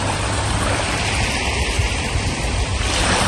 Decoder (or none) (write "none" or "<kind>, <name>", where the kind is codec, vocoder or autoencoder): vocoder, BigVGAN v2